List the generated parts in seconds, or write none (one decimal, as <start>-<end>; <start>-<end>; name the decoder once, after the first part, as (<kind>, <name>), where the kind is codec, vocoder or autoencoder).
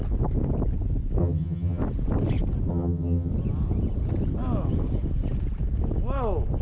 1.2-1.8 (vocoder, HiFi-GAN); 2.7-3.3